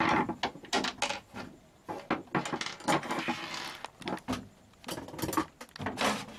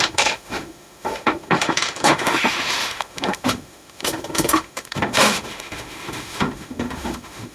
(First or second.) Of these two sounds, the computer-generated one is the second